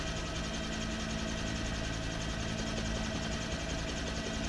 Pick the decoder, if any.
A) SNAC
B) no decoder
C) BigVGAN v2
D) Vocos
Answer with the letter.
B